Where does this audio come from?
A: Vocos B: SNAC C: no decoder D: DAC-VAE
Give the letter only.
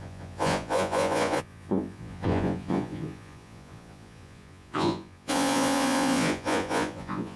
A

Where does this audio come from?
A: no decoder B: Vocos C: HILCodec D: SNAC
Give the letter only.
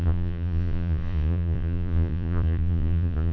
B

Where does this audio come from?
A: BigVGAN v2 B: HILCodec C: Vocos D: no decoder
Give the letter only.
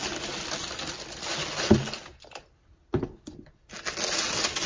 D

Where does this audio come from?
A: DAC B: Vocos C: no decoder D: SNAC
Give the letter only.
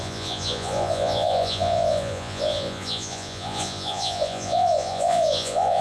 B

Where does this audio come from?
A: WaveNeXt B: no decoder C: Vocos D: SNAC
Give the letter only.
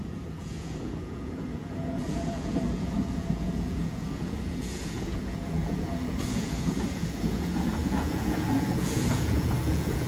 C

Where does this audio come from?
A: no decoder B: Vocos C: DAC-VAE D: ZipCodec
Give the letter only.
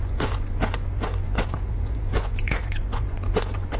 B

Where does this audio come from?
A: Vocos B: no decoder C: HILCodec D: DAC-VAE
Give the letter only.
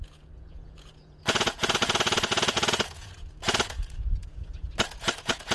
A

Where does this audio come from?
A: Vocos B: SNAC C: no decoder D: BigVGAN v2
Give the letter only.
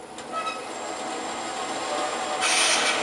C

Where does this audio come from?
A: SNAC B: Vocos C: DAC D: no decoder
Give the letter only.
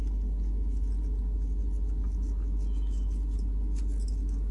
D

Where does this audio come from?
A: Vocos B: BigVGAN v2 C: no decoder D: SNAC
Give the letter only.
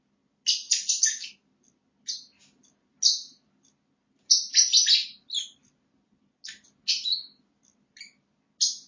C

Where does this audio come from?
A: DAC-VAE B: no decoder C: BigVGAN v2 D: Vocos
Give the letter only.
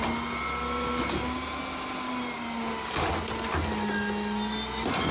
B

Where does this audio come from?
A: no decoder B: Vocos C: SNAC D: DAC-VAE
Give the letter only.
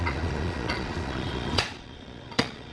B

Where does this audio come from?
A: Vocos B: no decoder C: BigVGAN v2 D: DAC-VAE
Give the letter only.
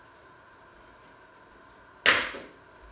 B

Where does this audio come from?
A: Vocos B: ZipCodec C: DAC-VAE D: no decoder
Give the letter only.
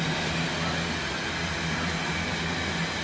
D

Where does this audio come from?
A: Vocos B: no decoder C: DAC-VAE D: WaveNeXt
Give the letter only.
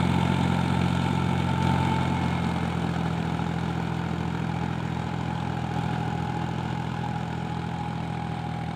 B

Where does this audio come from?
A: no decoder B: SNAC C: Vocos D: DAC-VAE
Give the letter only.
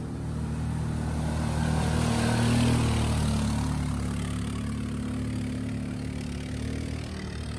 A